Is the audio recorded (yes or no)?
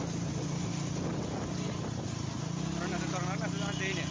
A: yes